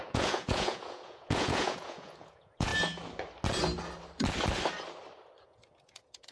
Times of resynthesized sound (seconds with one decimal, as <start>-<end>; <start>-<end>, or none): 0.0-2.7; 5.4-6.3